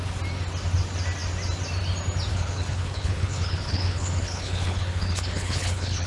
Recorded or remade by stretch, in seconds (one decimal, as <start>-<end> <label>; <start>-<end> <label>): 0.0-2.3 recorded; 2.3-6.1 remade